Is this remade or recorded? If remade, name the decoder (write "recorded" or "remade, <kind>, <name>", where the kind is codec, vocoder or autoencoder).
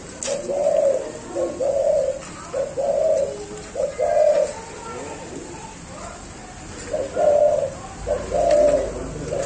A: recorded